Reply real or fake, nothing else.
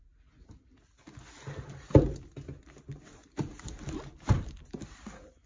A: real